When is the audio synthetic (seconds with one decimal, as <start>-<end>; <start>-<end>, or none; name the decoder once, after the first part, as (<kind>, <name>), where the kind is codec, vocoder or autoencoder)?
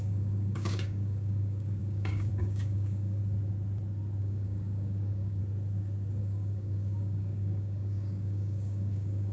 0.0-3.2 (codec, DAC); 4.2-5.4; 6.2-9.3